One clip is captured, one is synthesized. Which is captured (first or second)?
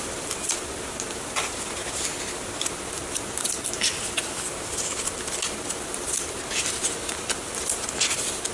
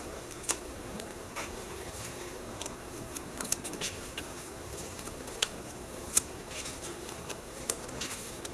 first